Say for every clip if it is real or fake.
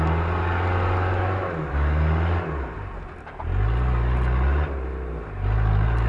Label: real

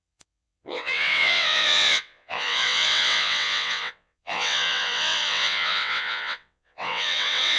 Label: fake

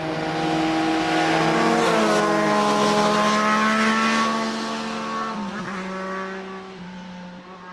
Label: real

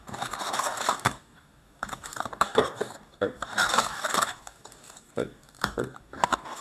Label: fake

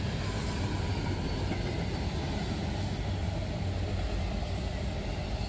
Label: real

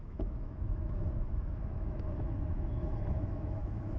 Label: fake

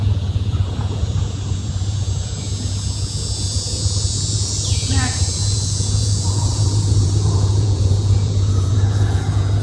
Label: fake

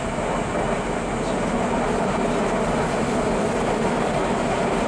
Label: real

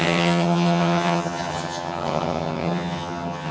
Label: fake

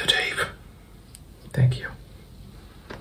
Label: real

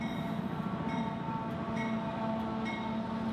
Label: real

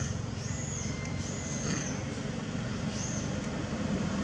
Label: real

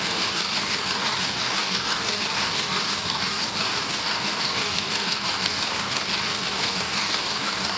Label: fake